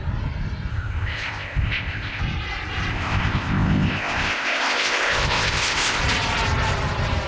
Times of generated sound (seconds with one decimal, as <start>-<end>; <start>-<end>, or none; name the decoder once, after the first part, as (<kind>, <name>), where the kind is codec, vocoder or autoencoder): 0.7-2.2 (codec, ZipCodec); 2.9-6.0